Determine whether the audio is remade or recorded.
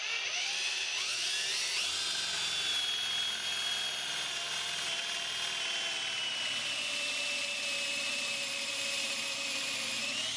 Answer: recorded